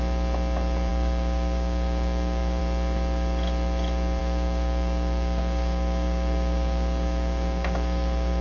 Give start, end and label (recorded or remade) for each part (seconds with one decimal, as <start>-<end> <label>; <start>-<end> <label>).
0.0-0.9 recorded; 0.9-2.6 remade; 2.6-4.2 recorded; 4.2-8.4 remade

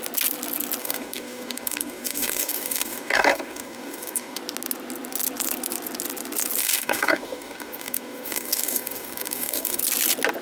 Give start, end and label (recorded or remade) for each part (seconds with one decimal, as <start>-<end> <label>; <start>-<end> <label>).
0.0-0.8 recorded; 0.8-4.4 remade; 4.4-6.6 recorded; 6.6-9.8 remade; 9.8-10.4 recorded

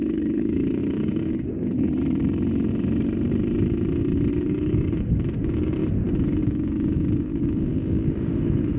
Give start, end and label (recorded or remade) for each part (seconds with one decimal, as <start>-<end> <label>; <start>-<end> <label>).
0.0-2.0 remade; 2.0-4.4 recorded; 4.4-5.8 remade; 5.8-6.4 recorded; 6.4-8.8 remade

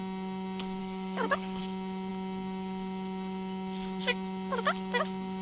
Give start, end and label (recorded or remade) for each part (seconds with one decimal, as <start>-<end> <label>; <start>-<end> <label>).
0.0-0.8 recorded; 0.8-1.6 remade; 1.6-5.4 recorded

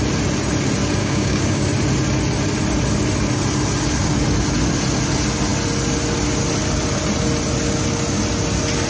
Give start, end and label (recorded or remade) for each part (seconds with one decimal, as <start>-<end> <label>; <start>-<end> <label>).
0.0-1.0 recorded; 1.0-1.6 remade; 1.6-8.9 recorded

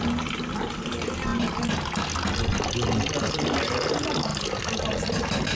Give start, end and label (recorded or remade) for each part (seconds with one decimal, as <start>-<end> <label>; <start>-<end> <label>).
0.0-5.5 recorded

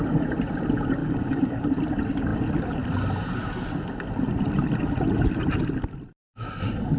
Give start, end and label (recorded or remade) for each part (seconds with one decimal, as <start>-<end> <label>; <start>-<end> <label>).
0.0-1.0 recorded; 1.0-1.6 remade; 1.6-7.0 recorded